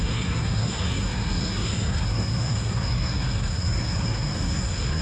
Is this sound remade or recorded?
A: remade